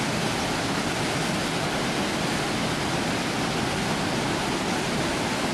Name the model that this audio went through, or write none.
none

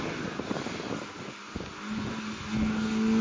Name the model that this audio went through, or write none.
none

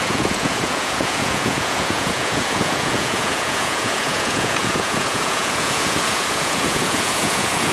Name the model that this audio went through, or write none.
vocoder, Vocos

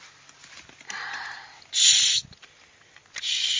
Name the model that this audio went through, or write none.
none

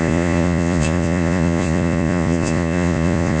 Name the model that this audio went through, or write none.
vocoder, Vocos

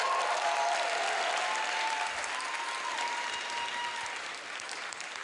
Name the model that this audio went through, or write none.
none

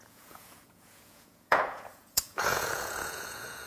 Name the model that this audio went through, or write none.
vocoder, Vocos